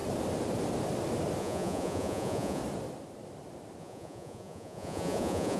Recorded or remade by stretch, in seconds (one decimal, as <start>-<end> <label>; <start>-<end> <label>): 0.0-1.4 recorded; 1.4-2.6 remade; 2.6-3.8 recorded; 3.8-5.6 remade